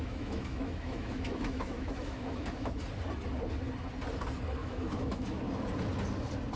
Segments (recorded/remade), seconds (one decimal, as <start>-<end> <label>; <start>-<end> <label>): 0.0-2.8 remade; 2.8-4.6 recorded; 4.6-5.4 remade; 5.4-6.6 recorded